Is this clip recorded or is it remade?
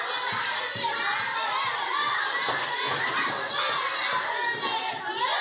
recorded